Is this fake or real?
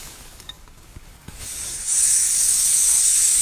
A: fake